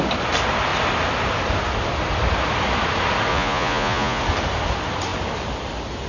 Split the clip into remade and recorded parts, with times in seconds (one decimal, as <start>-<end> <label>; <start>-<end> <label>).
0.0-3.3 recorded; 3.3-4.2 remade; 4.2-6.1 recorded